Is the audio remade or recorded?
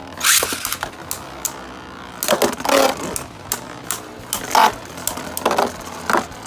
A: recorded